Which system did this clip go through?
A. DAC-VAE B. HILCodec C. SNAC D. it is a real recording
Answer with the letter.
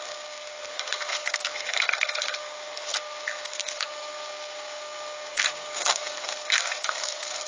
C